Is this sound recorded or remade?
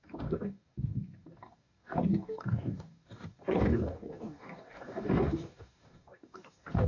remade